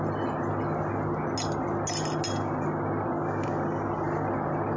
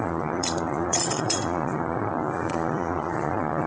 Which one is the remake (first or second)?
second